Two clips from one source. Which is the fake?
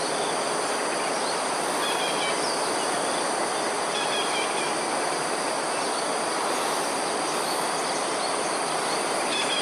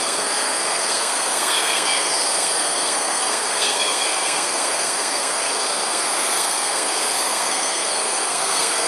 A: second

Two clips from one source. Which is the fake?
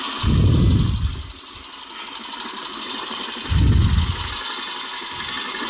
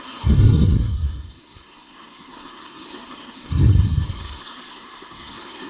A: second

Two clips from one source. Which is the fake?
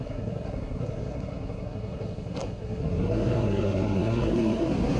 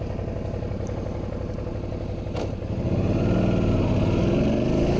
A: first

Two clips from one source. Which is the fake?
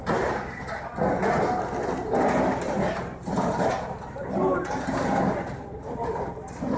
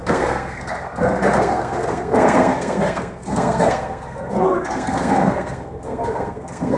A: second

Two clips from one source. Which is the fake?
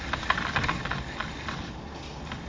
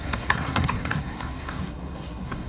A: second